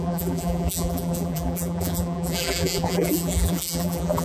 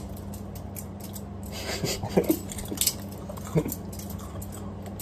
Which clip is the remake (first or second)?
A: first